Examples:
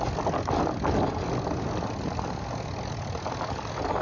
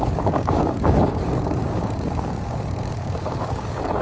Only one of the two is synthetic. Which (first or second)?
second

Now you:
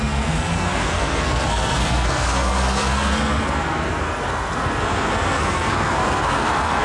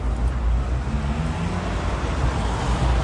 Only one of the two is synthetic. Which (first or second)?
first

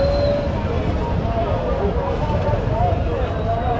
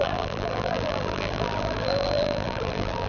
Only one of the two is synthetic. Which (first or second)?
second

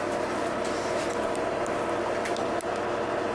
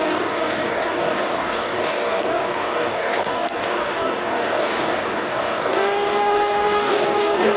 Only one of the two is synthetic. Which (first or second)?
second